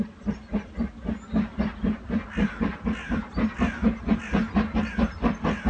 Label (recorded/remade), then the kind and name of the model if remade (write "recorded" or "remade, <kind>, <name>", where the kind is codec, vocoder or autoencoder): recorded